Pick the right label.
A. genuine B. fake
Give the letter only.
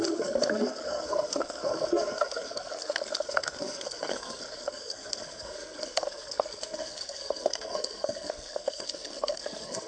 B